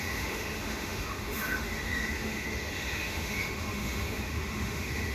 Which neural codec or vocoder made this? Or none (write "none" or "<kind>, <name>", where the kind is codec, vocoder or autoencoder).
autoencoder, DAC-VAE